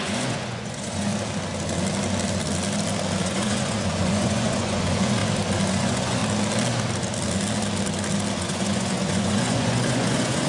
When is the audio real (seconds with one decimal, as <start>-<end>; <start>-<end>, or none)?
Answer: 1.1-3.2; 5.2-5.7; 6.2-8.4

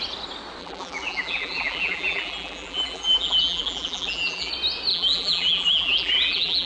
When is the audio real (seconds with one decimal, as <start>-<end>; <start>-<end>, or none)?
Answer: 0.0-0.6; 4.5-4.9